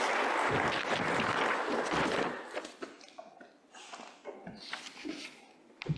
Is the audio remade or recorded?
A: recorded